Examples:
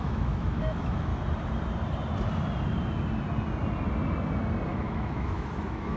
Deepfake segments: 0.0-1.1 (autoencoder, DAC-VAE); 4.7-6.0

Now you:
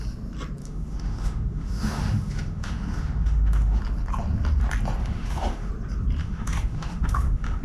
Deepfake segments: 0.6-3.8 (autoencoder, DAC-VAE); 5.0-5.7; 6.2-7.6

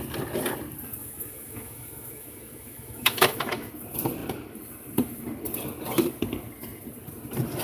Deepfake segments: 1.0-3.7 (autoencoder, DAC-VAE)

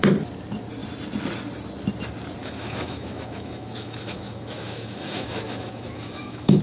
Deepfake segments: 2.4-6.6 (autoencoder, DAC-VAE)

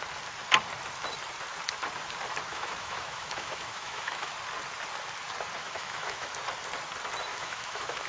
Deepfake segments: 2.5-4.3 (autoencoder, DAC-VAE); 5.6-6.3; 7.3-8.1

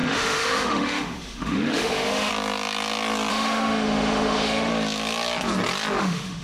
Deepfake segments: 0.0-2.3 (autoencoder, DAC-VAE); 3.3-4.7; 6.0-6.4